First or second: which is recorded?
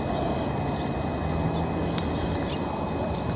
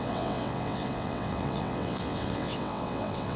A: first